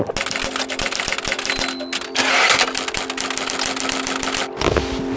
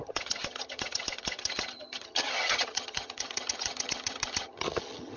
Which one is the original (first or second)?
first